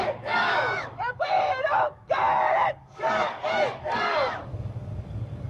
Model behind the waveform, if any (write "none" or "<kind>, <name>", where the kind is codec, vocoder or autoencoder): codec, DAC